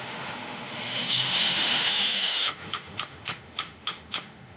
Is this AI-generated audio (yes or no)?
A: yes